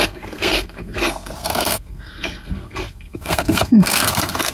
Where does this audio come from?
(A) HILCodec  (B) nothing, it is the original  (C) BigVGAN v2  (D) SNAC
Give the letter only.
D